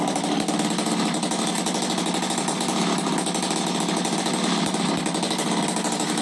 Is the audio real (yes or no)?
yes